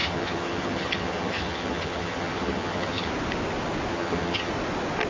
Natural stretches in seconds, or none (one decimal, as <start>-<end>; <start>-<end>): 3.1-3.9; 4.5-5.1